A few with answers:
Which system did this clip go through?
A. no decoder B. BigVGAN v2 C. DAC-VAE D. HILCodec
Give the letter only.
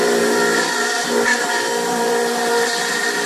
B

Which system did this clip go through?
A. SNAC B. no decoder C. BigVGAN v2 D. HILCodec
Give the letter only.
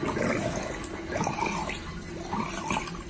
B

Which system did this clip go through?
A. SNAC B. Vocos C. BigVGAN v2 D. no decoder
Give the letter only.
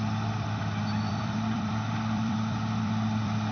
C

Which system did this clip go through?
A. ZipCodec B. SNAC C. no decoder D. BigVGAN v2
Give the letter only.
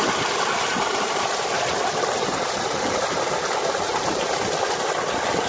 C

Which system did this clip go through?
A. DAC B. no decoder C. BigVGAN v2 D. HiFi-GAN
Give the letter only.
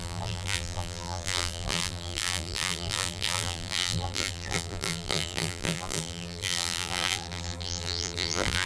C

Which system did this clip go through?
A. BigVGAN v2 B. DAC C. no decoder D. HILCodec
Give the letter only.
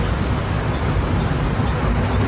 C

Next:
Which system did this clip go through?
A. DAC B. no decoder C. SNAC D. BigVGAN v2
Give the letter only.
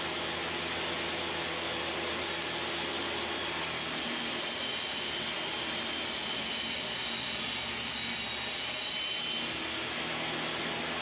B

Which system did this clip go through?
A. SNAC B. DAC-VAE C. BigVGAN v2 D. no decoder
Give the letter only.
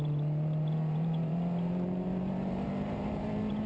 C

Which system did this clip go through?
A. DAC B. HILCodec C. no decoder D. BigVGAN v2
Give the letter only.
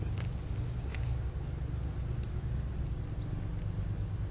C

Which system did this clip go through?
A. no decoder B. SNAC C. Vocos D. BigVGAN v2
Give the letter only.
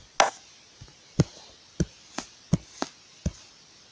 A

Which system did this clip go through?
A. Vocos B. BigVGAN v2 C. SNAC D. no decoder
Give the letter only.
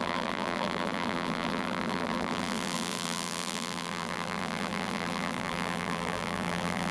B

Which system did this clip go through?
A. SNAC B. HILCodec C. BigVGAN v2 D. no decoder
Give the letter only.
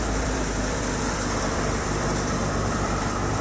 C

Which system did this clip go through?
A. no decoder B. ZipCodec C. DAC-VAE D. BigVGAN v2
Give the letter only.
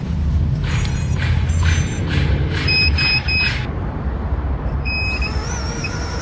D